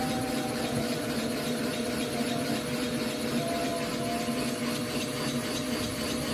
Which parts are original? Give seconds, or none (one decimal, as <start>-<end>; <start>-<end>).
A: 3.7-4.8